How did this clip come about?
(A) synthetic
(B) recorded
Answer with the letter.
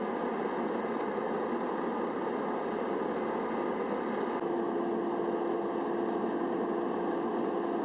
B